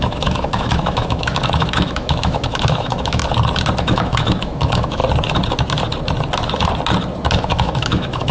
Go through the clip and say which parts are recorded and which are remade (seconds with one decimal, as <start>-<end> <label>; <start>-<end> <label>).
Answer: 0.0-3.2 remade; 3.2-3.8 recorded; 3.8-5.0 remade; 5.0-7.3 recorded; 7.3-8.3 remade